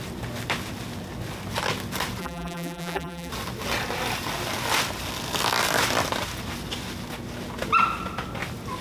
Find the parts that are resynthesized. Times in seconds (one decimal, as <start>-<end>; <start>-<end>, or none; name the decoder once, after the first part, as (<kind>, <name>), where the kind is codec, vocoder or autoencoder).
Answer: 2.2-3.3 (vocoder, BigVGAN v2)